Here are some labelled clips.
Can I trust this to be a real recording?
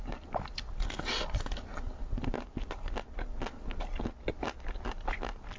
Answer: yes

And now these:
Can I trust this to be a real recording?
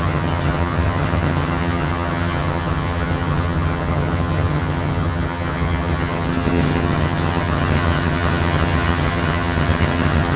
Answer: no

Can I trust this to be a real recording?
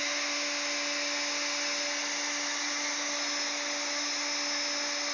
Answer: yes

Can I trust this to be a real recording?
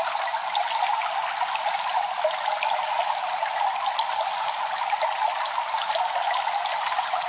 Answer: yes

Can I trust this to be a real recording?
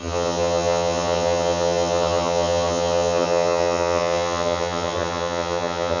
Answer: no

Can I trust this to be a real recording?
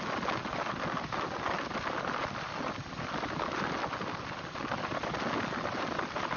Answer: yes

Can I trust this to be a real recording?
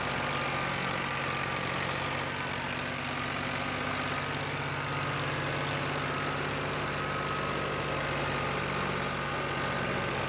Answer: yes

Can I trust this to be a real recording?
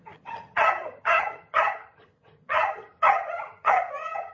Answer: no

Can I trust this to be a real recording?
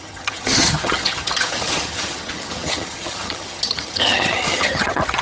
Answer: no